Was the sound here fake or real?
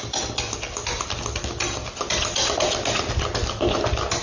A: real